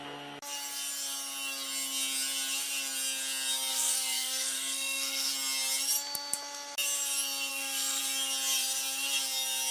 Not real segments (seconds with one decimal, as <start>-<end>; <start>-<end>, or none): 3.7-5.3; 7.5-8.0